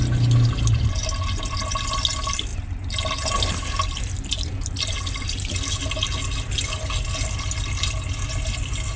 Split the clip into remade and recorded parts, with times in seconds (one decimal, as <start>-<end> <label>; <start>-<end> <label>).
0.0-9.0 recorded